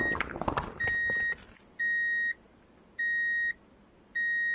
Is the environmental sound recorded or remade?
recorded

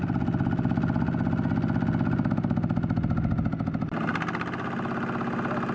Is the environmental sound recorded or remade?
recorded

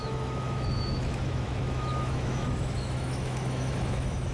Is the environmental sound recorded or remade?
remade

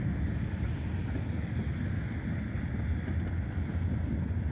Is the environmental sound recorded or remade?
recorded